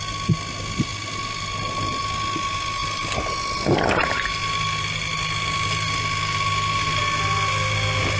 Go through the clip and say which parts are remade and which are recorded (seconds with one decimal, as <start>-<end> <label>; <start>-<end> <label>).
0.0-0.9 recorded; 0.9-2.0 remade; 2.0-4.4 recorded; 4.4-7.0 remade; 7.0-8.2 recorded